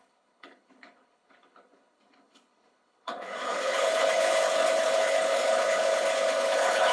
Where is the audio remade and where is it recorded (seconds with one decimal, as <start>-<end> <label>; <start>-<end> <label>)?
0.0-6.9 remade